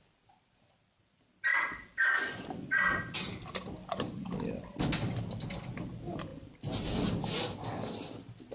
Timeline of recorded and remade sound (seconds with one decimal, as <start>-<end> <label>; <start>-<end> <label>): 0.0-1.5 recorded; 1.5-4.0 remade; 4.0-6.3 recorded; 6.3-7.1 remade; 7.1-8.5 recorded